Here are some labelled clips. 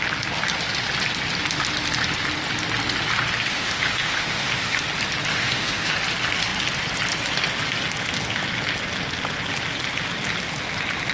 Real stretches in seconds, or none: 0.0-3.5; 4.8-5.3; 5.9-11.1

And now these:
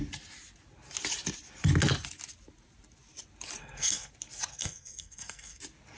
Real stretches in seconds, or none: 0.0-3.6; 4.1-4.5; 5.6-6.0

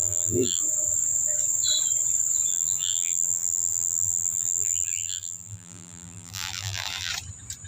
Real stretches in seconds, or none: 0.6-2.5; 7.1-7.7

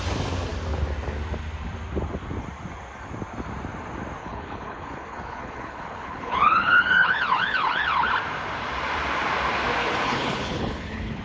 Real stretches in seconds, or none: 0.0-4.2; 8.1-9.8

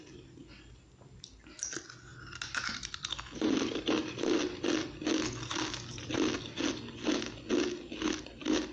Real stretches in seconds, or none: 0.0-8.7